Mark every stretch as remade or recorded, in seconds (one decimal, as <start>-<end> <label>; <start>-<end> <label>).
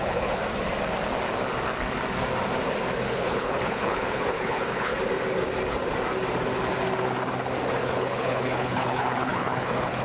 0.0-0.4 remade; 0.4-3.1 recorded; 3.1-4.9 remade; 4.9-7.8 recorded; 7.8-10.0 remade